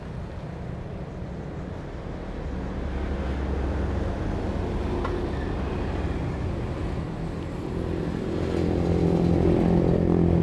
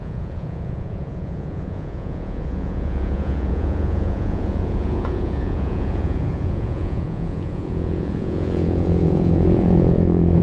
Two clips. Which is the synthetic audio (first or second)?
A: second